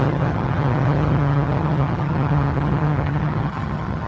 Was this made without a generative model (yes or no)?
no